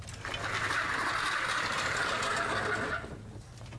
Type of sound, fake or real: real